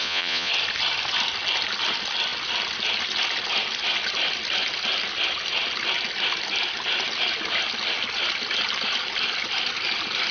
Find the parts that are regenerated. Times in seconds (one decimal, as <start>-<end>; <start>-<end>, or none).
0.0-0.5